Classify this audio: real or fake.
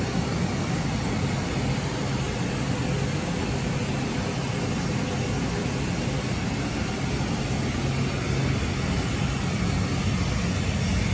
real